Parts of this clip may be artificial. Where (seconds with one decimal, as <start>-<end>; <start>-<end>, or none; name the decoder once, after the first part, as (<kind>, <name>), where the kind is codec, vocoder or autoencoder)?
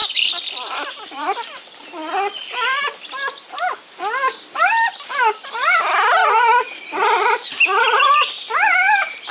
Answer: none